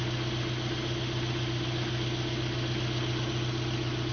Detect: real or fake real